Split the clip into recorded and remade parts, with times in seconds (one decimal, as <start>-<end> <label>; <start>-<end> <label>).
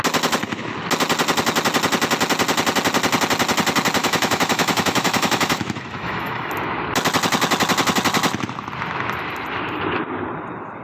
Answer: 0.0-4.0 recorded; 4.0-6.5 remade; 6.5-10.8 recorded